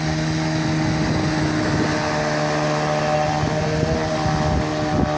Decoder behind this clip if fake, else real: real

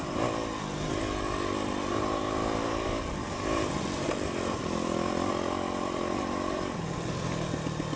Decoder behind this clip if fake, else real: real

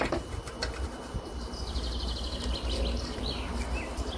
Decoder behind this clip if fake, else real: real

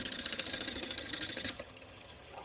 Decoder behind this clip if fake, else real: fake, vocoder, HiFi-GAN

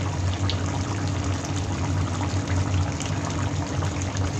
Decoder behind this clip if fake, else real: real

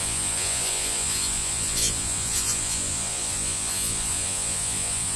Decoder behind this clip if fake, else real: fake, vocoder, Vocos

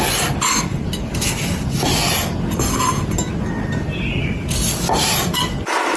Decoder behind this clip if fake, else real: real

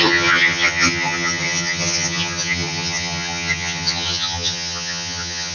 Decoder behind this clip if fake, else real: fake, vocoder, HiFi-GAN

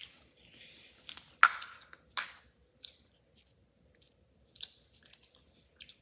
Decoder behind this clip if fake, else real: real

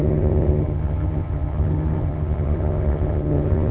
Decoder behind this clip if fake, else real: fake, vocoder, HiFi-GAN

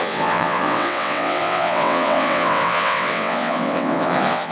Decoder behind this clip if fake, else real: fake, vocoder, WaveNeXt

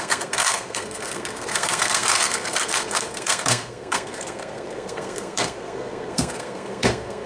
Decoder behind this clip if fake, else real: fake, codec, SNAC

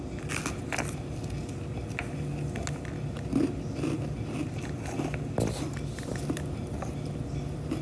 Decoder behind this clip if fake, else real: real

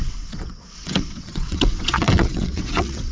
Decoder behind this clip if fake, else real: fake, vocoder, WaveNeXt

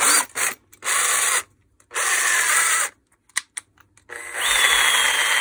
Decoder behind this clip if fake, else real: real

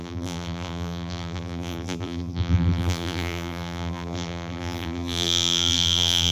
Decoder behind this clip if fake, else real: fake, vocoder, BigVGAN v2